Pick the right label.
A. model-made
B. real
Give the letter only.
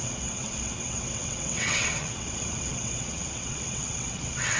A